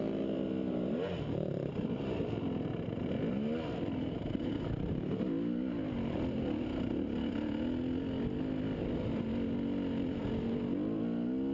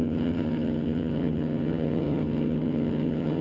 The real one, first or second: first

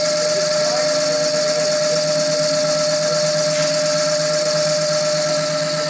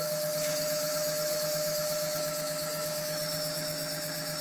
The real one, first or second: first